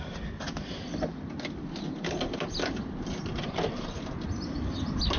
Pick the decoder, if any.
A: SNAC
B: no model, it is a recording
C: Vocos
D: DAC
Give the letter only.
B